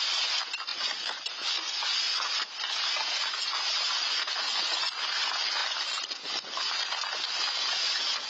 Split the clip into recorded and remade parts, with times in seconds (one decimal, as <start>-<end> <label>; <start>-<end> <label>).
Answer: 0.0-8.3 recorded